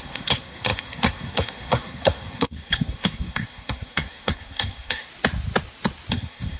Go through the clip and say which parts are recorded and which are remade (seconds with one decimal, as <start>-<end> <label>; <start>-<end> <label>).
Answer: 0.0-5.1 remade; 5.1-6.1 recorded; 6.1-6.6 remade